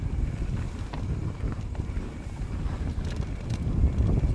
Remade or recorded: recorded